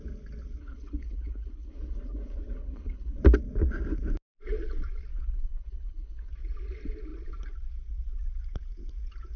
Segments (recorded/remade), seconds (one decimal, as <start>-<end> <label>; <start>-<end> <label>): 0.0-0.6 recorded; 0.6-3.2 remade; 3.2-5.1 recorded; 5.1-6.3 remade; 6.3-9.4 recorded